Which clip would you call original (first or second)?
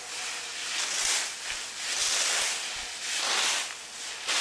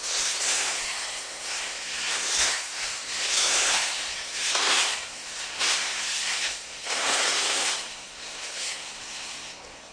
first